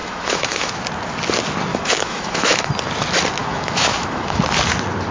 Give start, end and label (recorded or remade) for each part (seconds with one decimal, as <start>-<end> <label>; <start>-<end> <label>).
0.0-0.7 remade; 0.7-1.7 recorded; 1.7-2.7 remade; 2.7-3.4 recorded; 3.4-4.4 remade; 4.4-5.1 recorded